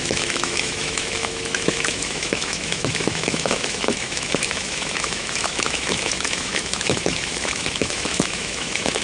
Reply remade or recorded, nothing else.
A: remade